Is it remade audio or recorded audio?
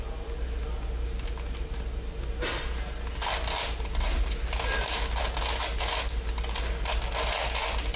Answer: recorded